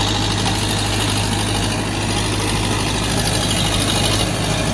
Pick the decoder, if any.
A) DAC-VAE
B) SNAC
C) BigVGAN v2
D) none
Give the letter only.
D